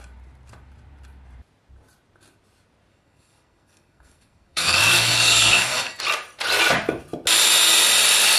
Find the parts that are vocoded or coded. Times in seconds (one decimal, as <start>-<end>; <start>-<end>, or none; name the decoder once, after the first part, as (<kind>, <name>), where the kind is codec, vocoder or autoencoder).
2.9-6.0 (codec, SNAC)